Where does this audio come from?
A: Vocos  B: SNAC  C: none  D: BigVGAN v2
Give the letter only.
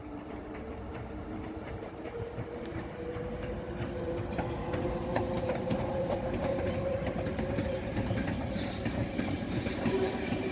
D